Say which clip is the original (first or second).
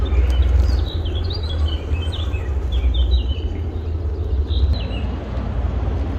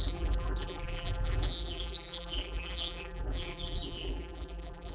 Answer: first